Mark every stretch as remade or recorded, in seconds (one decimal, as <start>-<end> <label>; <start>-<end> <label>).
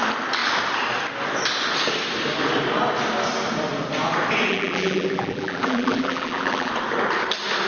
0.0-4.5 recorded; 4.5-6.7 remade; 6.7-7.7 recorded